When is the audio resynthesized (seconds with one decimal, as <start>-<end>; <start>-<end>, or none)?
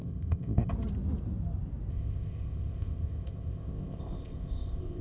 0.0-0.7; 1.9-5.0